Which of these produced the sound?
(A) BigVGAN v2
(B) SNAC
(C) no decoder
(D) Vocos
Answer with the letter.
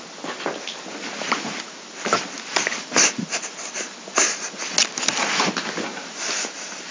C